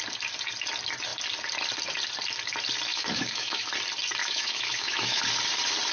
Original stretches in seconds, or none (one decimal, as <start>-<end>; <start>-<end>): 0.0-2.9; 3.7-4.2; 5.2-5.9